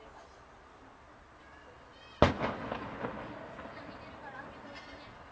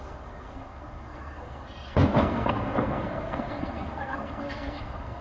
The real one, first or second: first